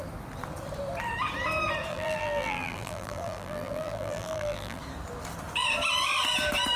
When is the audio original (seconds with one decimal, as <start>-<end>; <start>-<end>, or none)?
0.0-1.9; 4.8-6.8